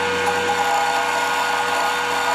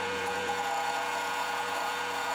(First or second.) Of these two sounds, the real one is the first